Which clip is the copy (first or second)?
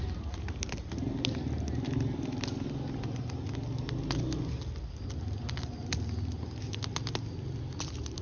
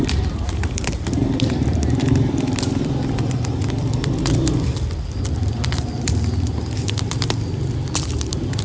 second